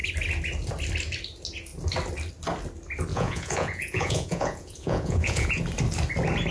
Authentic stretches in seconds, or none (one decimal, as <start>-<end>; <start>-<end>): 0.0-3.1; 5.6-6.5